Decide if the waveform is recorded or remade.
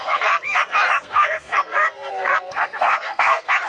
remade